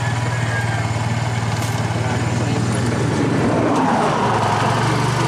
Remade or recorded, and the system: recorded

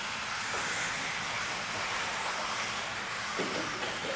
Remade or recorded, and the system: recorded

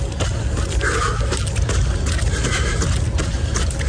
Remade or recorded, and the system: recorded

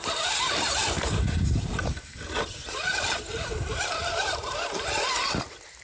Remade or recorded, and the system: remade, vocoder, BigVGAN v2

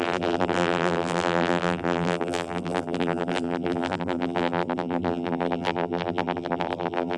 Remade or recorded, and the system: remade, vocoder, BigVGAN v2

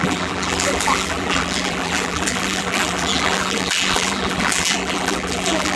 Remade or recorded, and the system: remade, vocoder, BigVGAN v2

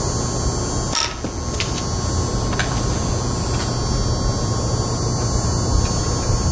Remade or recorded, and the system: recorded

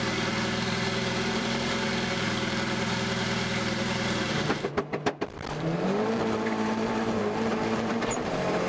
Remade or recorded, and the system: remade, vocoder, BigVGAN v2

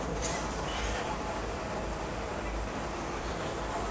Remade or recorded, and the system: remade, vocoder, BigVGAN v2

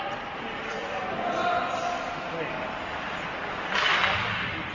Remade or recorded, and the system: recorded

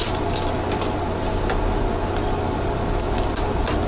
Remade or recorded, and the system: recorded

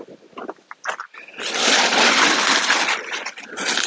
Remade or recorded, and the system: recorded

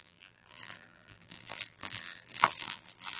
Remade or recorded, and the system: remade, vocoder, BigVGAN v2